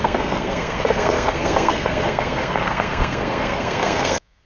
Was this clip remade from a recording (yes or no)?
yes